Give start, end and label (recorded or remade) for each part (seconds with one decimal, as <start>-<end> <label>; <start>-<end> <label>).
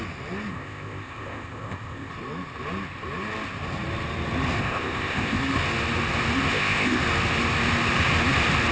0.0-0.5 recorded; 0.5-2.1 remade; 2.1-4.6 recorded; 4.6-5.4 remade; 5.4-6.5 recorded; 6.5-7.0 remade; 7.0-8.7 recorded